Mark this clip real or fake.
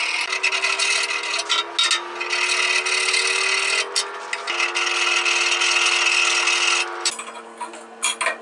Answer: real